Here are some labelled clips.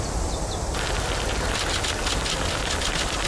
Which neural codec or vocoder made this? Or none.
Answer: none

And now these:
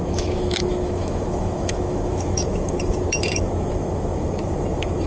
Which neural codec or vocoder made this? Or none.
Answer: autoencoder, DAC-VAE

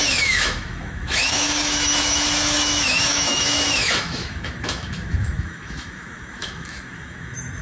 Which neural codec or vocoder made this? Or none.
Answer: autoencoder, DAC-VAE